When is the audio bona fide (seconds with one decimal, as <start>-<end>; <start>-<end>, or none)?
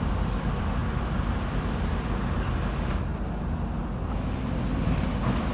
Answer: 3.1-4.0